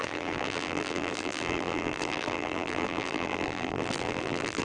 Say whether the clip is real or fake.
fake